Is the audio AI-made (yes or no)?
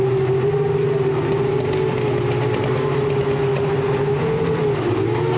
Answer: no